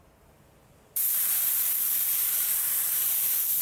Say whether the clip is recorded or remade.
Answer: remade